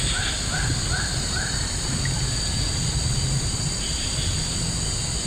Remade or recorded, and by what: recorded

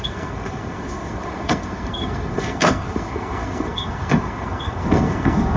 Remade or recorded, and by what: remade, codec, SNAC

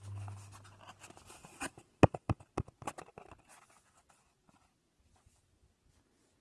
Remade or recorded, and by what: recorded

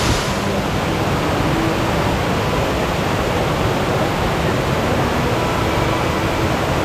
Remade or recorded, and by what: recorded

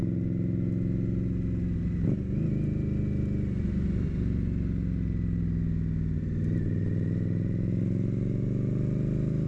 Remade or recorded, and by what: recorded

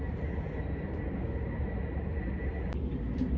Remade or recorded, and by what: recorded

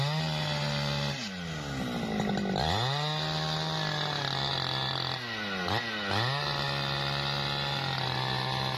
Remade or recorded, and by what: recorded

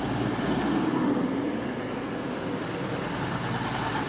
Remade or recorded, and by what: recorded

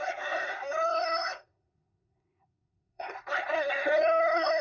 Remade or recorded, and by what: remade, codec, SNAC